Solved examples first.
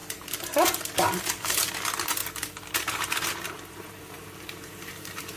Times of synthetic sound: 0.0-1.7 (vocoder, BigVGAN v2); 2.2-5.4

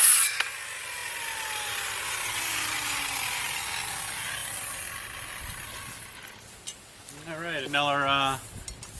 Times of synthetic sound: 4.4-7.1 (vocoder, BigVGAN v2)

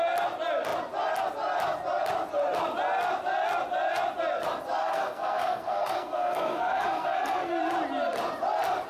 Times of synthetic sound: 4.8-7.6 (codec, SNAC)

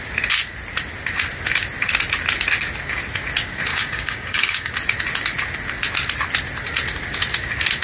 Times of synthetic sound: 3.7-4.7 (codec, DAC)

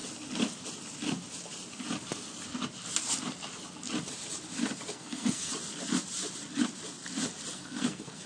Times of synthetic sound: 4.9-5.5 (codec, SNAC); 7.5-8.3

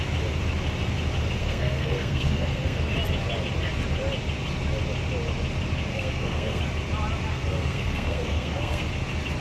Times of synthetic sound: 1.4-2.9 (codec, SNAC); 5.9-6.6; 7.3-8.9